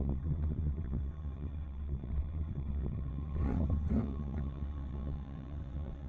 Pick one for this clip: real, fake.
fake